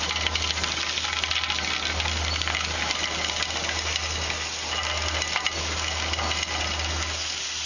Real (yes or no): yes